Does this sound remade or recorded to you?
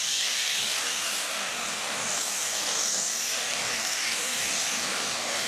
remade